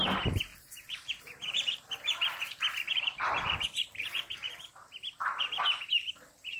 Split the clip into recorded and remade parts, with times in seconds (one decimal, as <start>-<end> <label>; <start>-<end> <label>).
0.0-0.5 recorded; 0.5-4.5 remade; 4.5-6.6 recorded